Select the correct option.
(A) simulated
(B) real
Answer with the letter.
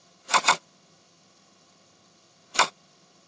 A